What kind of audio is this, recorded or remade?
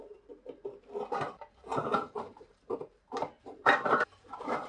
remade